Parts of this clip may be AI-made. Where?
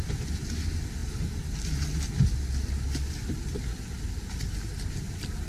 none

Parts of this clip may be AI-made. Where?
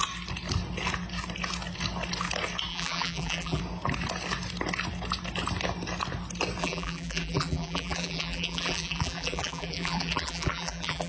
2.7-3.6 (vocoder, BigVGAN v2); 6.6-11.1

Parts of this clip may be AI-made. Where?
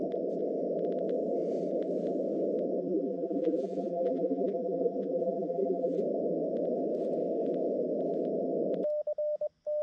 2.8-6.0 (vocoder, BigVGAN v2)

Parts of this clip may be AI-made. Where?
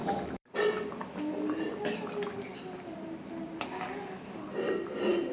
0.0-1.3 (vocoder, BigVGAN v2)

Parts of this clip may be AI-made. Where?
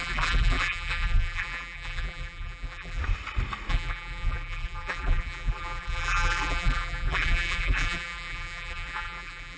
0.0-3.0 (vocoder, BigVGAN v2); 3.7-9.6